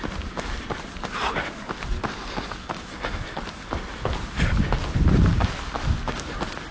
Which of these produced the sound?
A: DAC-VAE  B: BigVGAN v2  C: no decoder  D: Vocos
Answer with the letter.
C